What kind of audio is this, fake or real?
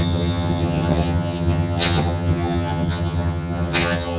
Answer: fake